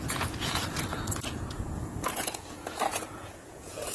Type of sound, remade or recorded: remade